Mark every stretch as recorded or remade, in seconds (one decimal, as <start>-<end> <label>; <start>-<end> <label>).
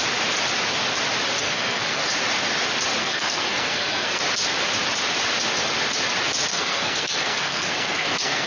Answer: 0.0-1.4 recorded; 1.4-2.0 remade; 2.0-3.0 recorded; 3.0-4.2 remade; 4.2-6.5 recorded; 6.5-8.5 remade